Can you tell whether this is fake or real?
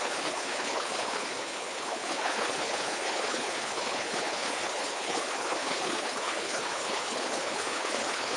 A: fake